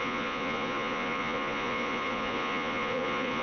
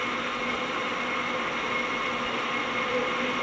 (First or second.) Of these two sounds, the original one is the second